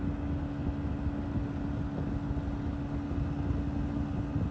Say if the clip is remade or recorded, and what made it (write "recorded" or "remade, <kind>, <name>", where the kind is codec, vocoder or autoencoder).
recorded